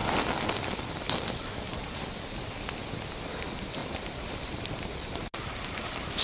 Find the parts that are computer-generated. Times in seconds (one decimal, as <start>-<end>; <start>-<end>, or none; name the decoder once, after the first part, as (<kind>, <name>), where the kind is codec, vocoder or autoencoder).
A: 0.0-2.7 (vocoder, BigVGAN v2); 3.8-4.5